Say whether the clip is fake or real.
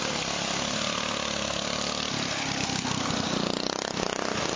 real